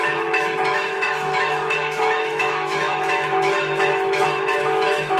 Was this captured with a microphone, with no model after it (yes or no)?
no